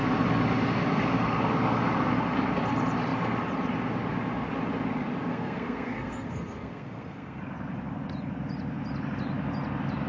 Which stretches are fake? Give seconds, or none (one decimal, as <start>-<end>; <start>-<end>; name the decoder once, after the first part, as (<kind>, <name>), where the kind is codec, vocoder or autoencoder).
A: 5.3-7.4 (codec, SNAC)